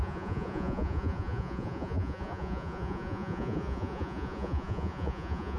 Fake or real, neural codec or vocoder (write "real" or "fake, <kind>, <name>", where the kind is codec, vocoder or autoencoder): fake, vocoder, Vocos